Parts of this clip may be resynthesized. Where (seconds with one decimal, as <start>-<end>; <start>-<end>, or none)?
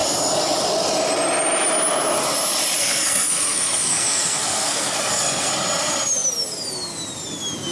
2.8-5.5